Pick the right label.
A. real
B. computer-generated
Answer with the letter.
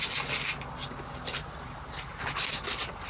A